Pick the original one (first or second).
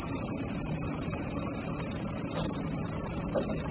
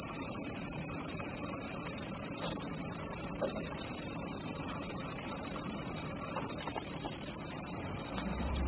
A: first